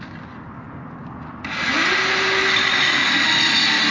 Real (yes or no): yes